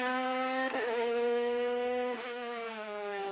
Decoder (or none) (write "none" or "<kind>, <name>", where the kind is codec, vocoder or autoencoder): autoencoder, DAC-VAE